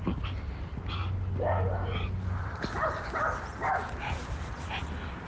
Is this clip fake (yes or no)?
no